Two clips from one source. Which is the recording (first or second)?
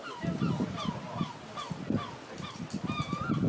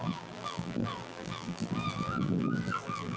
first